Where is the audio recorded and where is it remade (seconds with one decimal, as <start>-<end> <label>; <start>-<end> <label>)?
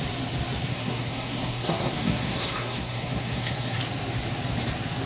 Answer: 0.0-0.7 recorded; 0.7-3.8 remade; 3.8-5.1 recorded